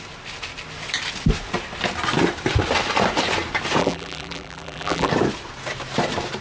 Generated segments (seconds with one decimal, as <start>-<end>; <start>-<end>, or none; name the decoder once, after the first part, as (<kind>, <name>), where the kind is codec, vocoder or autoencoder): 3.8-5.1 (vocoder, BigVGAN v2)